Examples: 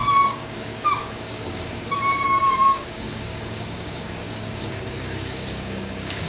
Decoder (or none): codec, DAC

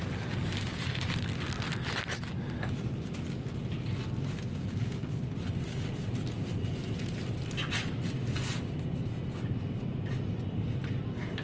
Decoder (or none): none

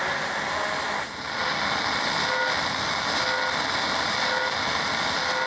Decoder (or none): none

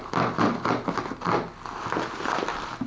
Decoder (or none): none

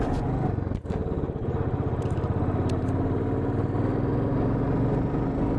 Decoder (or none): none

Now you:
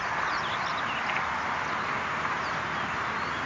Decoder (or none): none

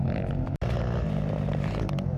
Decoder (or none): none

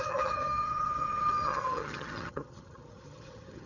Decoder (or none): vocoder, HiFi-GAN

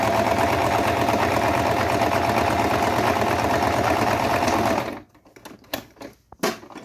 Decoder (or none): none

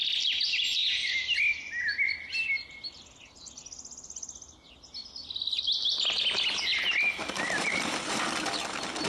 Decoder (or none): none